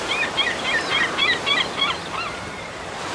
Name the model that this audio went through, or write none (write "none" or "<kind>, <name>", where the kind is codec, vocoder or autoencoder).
vocoder, BigVGAN v2